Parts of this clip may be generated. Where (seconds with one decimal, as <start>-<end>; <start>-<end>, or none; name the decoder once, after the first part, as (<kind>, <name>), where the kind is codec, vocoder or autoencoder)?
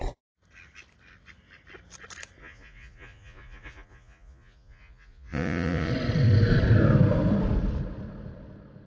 2.4-5.9 (vocoder, Vocos)